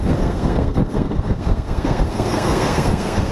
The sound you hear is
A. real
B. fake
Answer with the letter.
B